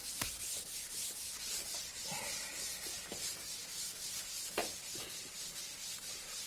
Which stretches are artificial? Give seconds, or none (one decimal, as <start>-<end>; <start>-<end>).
none